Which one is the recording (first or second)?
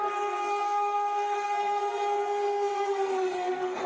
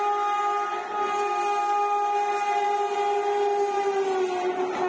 second